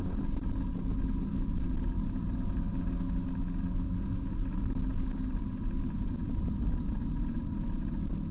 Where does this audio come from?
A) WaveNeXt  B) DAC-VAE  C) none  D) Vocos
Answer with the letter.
C